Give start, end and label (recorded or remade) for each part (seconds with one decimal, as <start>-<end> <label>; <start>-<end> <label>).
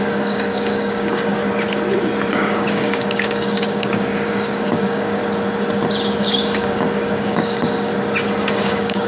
0.0-1.4 remade; 1.4-2.3 recorded; 2.3-5.2 remade; 5.2-6.2 recorded; 6.2-7.9 remade; 7.9-8.5 recorded; 8.5-9.1 remade